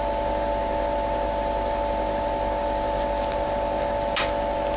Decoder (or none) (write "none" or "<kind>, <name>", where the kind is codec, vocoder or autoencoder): none